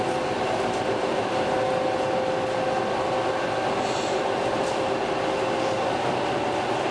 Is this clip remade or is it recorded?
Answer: recorded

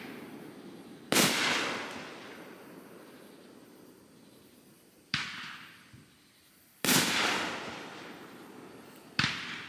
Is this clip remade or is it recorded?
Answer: recorded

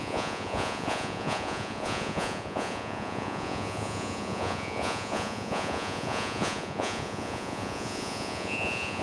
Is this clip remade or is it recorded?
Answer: remade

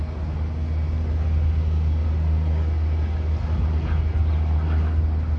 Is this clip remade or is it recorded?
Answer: recorded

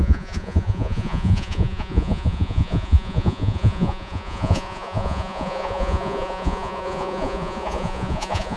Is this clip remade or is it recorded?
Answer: remade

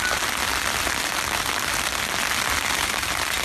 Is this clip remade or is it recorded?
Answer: recorded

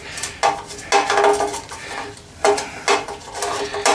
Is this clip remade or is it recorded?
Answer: recorded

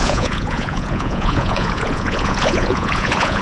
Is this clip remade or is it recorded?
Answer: remade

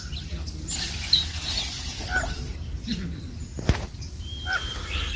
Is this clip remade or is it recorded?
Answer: recorded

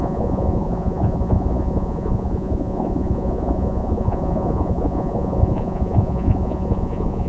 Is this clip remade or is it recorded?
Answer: remade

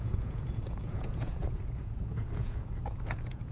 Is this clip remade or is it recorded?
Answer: remade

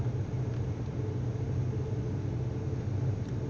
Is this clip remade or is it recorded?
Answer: recorded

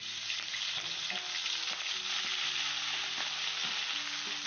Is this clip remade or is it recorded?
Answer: recorded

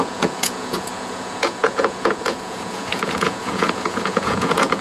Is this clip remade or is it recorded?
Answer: remade